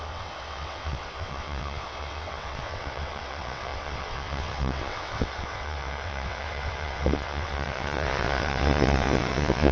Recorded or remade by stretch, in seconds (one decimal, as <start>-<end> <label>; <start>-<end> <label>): 0.0-9.7 remade